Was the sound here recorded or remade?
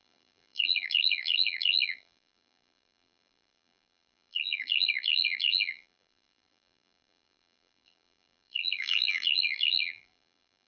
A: remade